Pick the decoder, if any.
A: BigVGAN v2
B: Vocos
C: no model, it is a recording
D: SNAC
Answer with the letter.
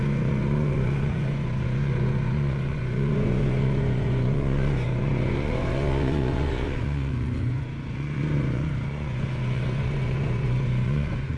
B